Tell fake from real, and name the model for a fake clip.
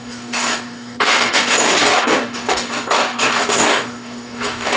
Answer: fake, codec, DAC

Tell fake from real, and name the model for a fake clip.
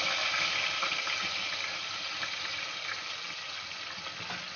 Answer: real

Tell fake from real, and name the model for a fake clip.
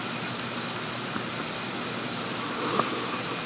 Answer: real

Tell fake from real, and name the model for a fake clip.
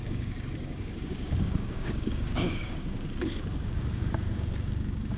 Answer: fake, codec, DAC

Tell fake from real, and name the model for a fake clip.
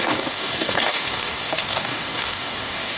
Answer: fake, codec, DAC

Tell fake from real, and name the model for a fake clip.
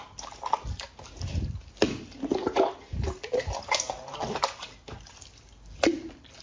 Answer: real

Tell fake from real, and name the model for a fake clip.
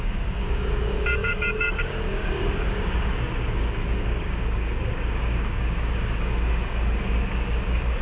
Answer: fake, codec, DAC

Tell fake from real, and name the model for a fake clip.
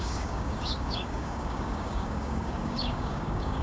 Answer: fake, codec, DAC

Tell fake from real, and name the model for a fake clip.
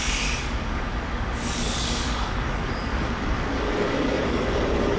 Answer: fake, codec, DAC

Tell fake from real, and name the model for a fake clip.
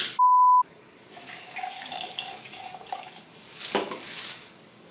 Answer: fake, codec, DAC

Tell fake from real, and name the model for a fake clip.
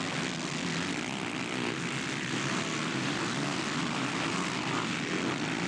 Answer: real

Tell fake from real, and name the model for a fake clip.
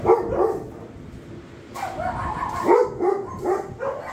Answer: real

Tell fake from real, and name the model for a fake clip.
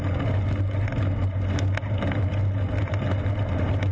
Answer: real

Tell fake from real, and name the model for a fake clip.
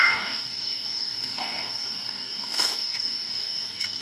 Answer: fake, codec, DAC